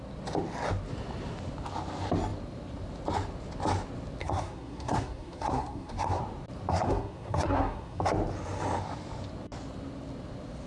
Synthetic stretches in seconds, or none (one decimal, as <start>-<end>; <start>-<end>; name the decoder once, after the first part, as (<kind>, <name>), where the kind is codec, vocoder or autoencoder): 4.2-6.2 (codec, SNAC); 6.7-8.0